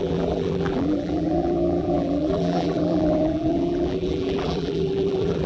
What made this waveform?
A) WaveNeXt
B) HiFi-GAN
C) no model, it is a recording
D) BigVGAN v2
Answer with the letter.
D